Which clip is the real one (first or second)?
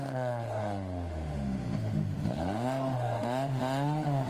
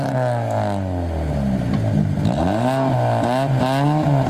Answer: second